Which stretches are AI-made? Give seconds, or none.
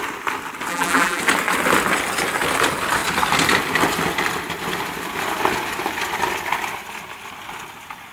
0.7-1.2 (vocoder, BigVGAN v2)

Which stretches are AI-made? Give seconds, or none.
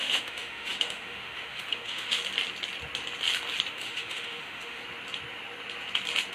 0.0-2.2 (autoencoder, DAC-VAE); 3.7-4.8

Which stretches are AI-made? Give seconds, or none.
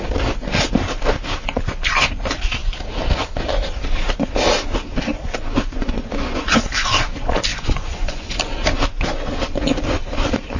5.1-6.6 (vocoder, Vocos); 7.5-8.4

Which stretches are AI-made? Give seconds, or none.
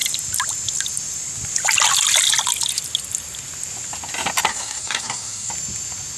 4.5-5.5 (codec, SNAC)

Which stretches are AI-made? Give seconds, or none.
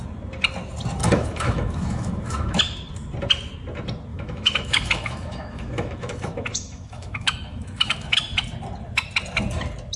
1.0-2.6 (autoencoder, DAC-VAE); 4.1-8.2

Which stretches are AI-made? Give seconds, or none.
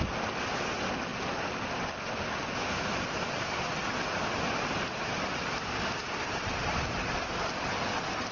none